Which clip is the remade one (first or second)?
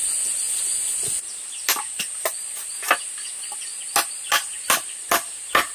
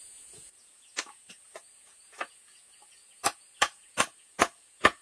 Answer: second